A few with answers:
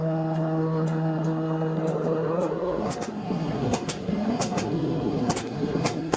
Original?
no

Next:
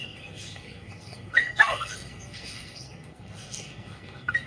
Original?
no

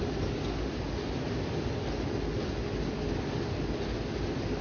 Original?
yes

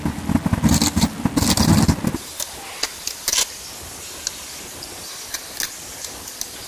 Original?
yes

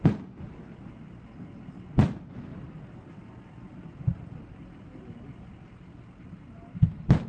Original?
yes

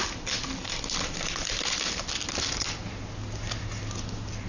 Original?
yes